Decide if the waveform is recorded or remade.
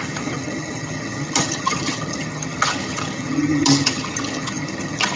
remade